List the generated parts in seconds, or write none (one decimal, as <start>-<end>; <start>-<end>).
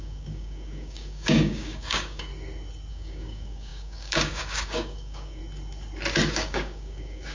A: 0.0-2.3; 2.9-5.4; 6.3-7.3